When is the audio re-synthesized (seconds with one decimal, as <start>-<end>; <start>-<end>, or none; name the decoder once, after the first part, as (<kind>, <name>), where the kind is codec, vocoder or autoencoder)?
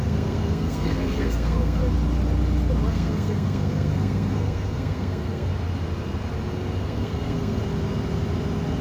0.0-1.8 (codec, SNAC); 2.9-5.5; 6.8-7.6